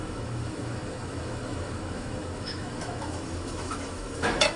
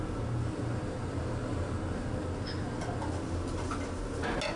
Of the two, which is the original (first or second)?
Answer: second